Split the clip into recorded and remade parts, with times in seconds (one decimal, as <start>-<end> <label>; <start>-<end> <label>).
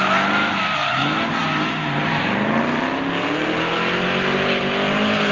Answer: 0.0-5.3 recorded